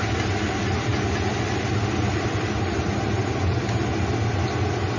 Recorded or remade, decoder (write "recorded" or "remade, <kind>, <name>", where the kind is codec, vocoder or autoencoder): recorded